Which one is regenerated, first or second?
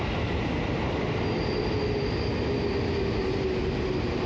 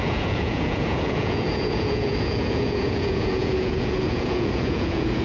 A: second